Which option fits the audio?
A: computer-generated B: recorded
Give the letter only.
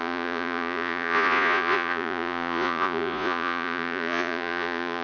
A